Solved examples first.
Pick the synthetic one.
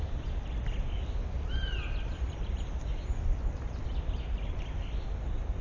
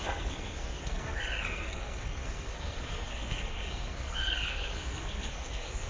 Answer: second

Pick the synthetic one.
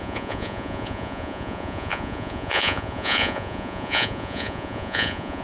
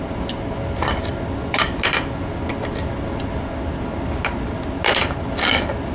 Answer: first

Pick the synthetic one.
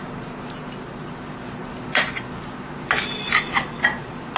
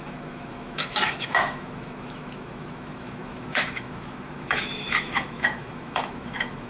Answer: second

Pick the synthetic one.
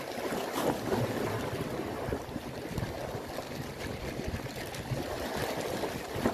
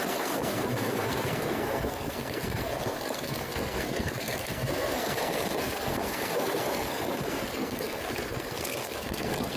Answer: second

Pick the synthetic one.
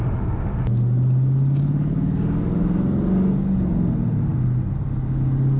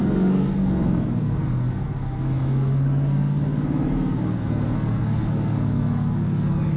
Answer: second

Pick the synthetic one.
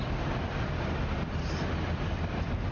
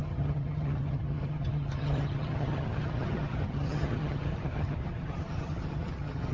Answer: second